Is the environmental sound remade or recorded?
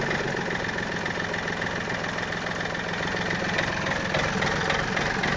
recorded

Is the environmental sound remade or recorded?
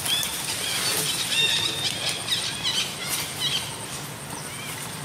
recorded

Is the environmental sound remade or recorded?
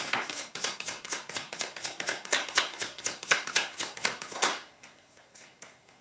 remade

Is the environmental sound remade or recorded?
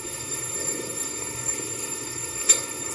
remade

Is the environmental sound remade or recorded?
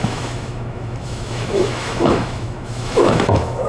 remade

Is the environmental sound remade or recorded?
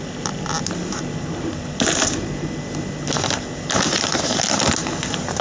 recorded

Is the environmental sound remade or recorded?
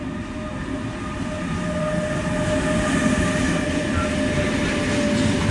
recorded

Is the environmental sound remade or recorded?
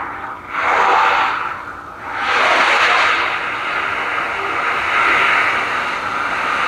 recorded